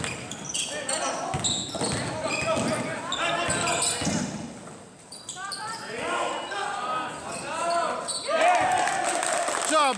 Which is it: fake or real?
real